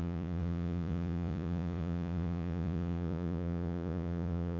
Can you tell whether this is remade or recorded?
remade